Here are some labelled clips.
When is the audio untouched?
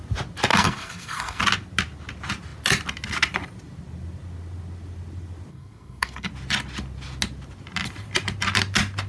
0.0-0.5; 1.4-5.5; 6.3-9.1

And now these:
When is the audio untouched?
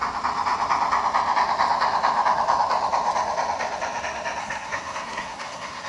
0.0-4.4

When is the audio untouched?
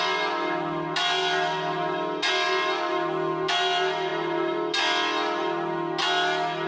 0.0-6.7